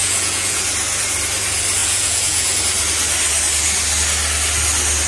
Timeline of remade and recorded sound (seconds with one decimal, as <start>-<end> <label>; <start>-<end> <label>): 0.0-0.6 remade; 0.6-1.8 recorded; 1.8-2.6 remade; 2.6-5.1 recorded

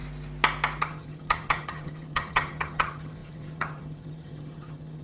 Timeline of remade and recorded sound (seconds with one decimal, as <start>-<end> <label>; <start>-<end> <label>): 0.0-0.8 recorded; 0.8-5.0 remade

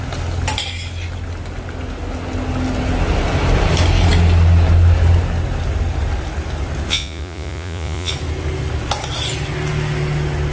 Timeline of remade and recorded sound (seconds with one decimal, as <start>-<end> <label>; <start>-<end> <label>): 0.0-6.9 recorded; 6.9-8.1 remade; 8.1-10.5 recorded

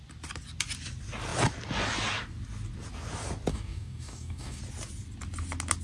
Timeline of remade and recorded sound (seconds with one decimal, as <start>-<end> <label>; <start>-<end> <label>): 0.0-3.5 recorded; 3.5-4.6 remade; 4.6-5.8 recorded

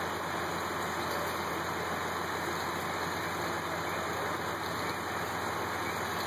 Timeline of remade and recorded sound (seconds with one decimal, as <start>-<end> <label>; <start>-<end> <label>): 0.0-6.3 recorded